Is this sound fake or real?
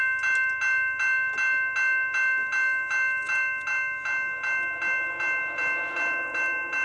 real